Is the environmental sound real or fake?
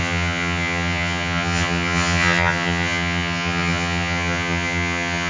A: fake